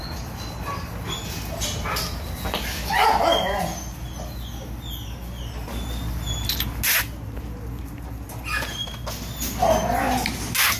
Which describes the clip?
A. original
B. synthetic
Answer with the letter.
A